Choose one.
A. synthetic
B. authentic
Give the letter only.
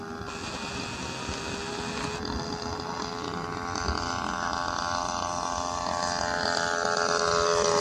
B